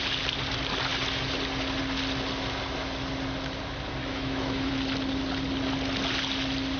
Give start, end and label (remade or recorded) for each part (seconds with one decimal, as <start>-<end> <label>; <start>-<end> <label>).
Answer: 0.0-4.0 recorded; 4.0-4.7 remade; 4.7-6.8 recorded